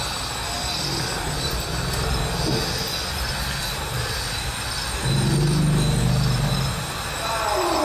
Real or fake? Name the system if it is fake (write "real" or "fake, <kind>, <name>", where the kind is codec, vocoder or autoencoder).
real